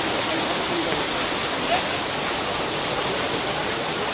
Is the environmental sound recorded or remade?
recorded